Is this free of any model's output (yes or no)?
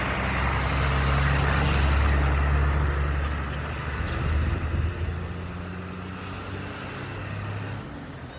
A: yes